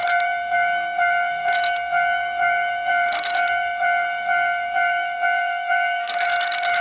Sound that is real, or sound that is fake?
fake